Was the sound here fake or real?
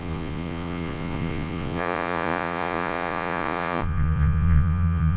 fake